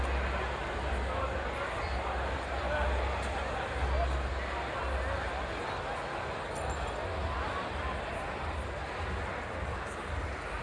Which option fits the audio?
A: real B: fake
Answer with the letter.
A